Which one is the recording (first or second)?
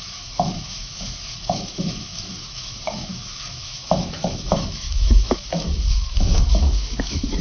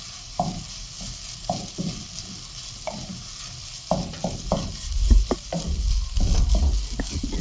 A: second